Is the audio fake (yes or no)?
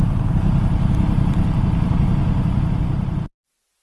no